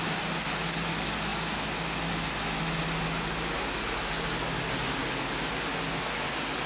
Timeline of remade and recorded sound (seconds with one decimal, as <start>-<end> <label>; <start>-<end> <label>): 0.0-6.7 recorded